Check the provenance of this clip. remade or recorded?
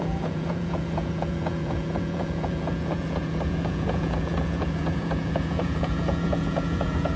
remade